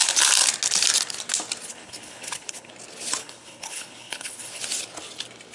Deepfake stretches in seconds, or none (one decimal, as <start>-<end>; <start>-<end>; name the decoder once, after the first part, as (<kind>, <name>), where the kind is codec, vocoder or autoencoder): 1.7-2.7 (codec, HILCodec); 3.2-4.6